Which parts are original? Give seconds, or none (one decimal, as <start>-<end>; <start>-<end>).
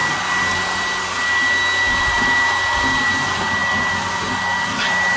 0.0-5.2